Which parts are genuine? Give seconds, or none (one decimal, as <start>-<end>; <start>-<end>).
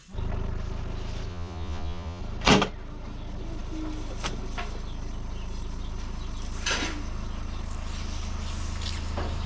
0.0-1.3; 2.2-9.5